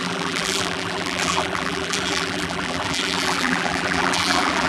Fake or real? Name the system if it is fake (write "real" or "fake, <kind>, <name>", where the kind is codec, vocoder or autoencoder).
fake, vocoder, BigVGAN v2